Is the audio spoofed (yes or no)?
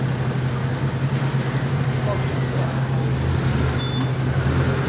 no